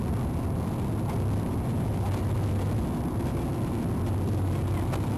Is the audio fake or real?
real